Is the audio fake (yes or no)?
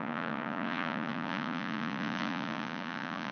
yes